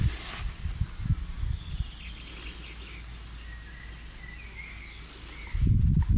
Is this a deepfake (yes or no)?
no